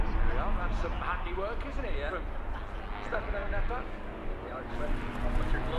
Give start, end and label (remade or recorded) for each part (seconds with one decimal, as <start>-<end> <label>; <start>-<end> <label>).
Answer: 0.0-3.4 recorded; 3.4-4.7 remade; 4.7-5.8 recorded